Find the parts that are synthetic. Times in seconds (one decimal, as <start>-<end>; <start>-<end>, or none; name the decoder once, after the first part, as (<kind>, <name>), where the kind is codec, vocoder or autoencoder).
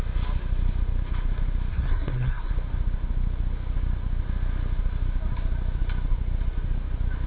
1.7-2.5 (codec, SNAC)